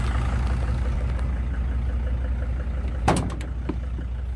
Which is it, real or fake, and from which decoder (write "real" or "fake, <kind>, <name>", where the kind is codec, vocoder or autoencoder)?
real